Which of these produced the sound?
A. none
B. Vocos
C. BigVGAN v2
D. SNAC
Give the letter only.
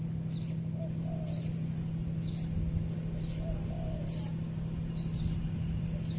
A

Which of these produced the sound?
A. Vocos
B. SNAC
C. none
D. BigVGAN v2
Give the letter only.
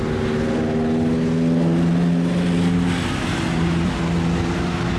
C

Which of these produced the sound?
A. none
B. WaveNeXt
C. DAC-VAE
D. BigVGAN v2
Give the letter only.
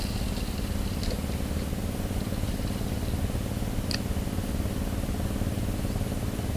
A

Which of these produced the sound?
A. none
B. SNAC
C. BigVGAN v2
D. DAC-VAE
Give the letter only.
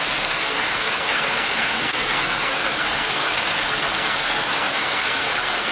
B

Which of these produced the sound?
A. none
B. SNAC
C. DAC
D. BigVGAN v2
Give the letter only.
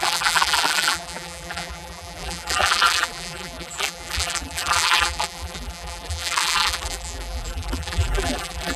D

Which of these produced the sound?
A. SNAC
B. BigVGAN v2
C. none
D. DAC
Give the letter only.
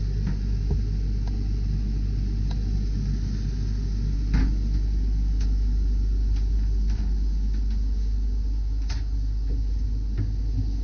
C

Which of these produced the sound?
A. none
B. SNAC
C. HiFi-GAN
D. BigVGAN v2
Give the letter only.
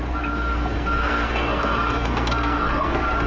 B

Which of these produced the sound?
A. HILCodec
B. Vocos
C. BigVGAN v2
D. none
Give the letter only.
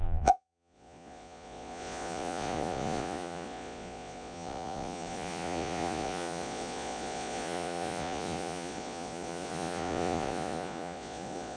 B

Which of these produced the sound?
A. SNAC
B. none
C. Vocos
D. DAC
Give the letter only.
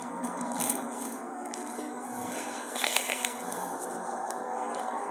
A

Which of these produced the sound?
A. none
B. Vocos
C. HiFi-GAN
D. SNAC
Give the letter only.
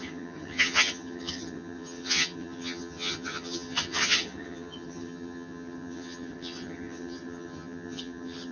C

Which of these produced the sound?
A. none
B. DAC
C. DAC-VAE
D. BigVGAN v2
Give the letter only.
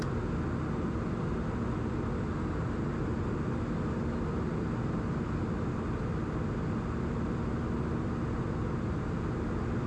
A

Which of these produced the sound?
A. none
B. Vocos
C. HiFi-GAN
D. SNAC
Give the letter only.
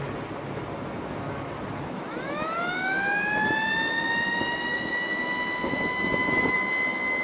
A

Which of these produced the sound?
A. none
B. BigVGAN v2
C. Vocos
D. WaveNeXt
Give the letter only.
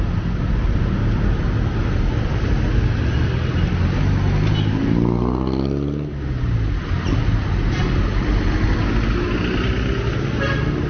A